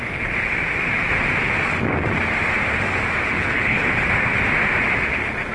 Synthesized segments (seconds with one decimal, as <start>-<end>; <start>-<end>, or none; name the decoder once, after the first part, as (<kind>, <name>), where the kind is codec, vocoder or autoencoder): 3.2-3.9 (codec, HILCodec)